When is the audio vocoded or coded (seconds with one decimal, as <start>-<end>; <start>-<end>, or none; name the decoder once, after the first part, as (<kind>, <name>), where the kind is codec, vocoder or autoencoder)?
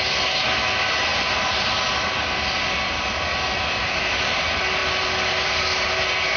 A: none